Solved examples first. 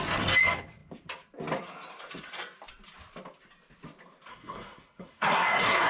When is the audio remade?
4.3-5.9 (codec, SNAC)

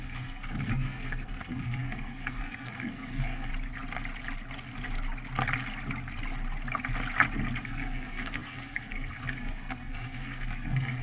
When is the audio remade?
0.0-3.5 (codec, SNAC); 7.6-11.0

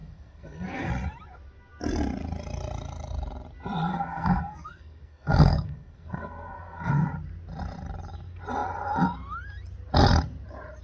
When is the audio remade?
0.0-0.9 (codec, SNAC); 3.9-6.9

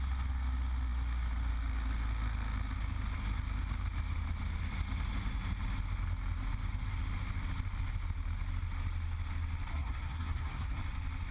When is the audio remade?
9.7-10.8 (codec, SNAC)

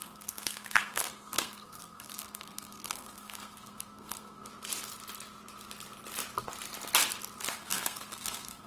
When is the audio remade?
0.0-4.5 (codec, SNAC); 7.6-8.7

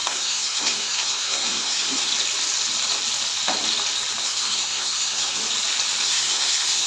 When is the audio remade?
0.0-2.1 (codec, SNAC); 4.2-5.4; 6.0-6.9

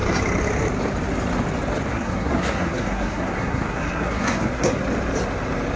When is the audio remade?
1.9-4.8 (codec, SNAC)